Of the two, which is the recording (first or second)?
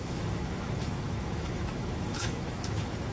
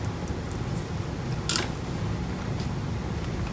second